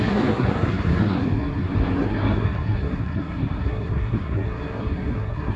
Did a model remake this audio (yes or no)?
yes